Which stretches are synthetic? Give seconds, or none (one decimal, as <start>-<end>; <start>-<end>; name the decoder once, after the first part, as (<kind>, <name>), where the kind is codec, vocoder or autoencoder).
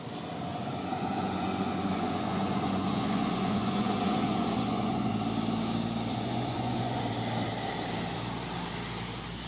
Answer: 0.5-5.1 (vocoder, Vocos); 6.1-7.0